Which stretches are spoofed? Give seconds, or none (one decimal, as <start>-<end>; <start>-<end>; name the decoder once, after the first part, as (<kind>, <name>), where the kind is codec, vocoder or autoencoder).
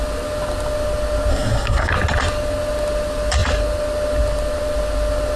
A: 1.3-1.9 (codec, SNAC)